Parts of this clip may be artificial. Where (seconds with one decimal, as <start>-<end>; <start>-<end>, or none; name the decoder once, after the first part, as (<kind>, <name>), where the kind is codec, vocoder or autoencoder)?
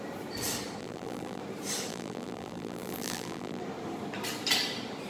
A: 0.8-1.4 (vocoder, BigVGAN v2); 1.9-3.6